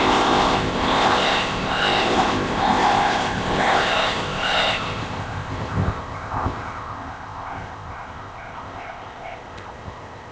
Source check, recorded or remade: remade